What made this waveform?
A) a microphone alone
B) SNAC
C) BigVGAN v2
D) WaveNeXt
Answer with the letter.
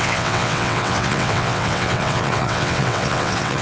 D